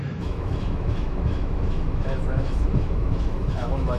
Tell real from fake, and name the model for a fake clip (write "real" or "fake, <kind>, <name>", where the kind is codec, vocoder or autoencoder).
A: fake, autoencoder, DAC-VAE